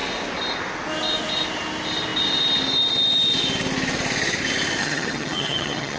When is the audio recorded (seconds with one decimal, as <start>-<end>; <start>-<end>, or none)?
0.0-4.8